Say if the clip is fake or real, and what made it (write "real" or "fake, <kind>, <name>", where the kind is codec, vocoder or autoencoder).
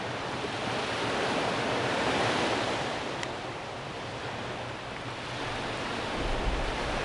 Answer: fake, vocoder, BigVGAN v2